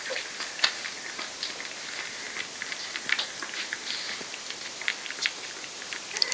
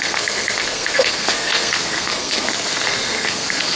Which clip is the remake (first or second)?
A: second